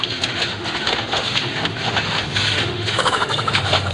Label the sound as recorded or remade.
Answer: remade